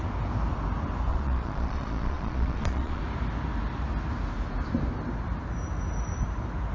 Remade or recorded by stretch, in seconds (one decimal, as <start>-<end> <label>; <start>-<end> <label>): 0.0-1.1 recorded; 1.1-3.0 remade; 3.0-6.7 recorded